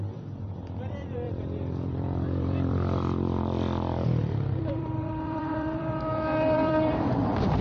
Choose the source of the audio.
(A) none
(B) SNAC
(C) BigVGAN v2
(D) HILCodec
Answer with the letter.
C